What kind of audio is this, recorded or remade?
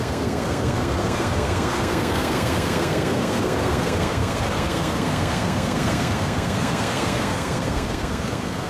remade